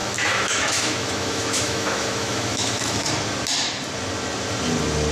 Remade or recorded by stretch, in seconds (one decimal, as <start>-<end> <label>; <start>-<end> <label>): 0.0-3.1 remade; 3.1-5.1 recorded